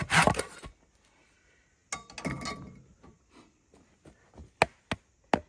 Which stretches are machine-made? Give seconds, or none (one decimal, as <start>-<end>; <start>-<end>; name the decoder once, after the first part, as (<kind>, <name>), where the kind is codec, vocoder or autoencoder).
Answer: none